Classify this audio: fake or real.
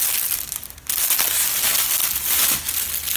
real